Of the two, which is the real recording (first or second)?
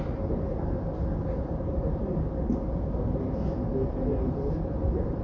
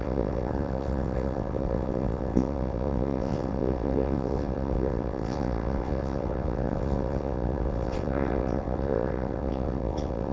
first